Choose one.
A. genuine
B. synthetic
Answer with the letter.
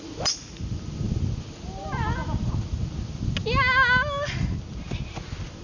A